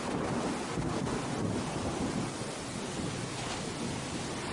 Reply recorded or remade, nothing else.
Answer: recorded